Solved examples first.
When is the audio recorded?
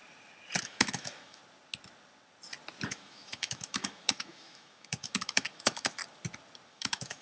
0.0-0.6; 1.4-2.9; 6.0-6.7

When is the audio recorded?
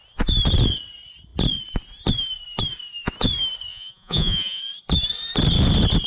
0.0-3.7; 4.6-6.1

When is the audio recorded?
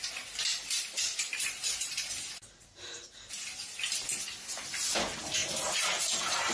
3.9-5.4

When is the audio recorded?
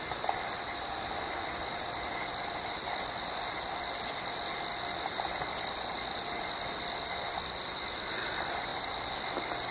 0.0-9.7